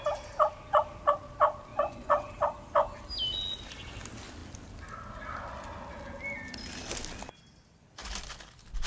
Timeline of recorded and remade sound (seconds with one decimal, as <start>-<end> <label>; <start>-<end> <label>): 0.0-1.7 recorded; 1.7-2.3 remade; 2.3-8.9 recorded